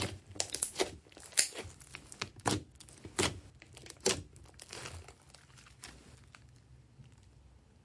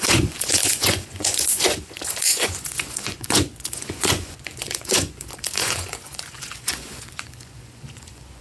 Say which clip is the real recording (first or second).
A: first